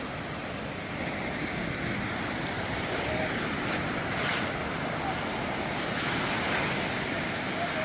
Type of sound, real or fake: real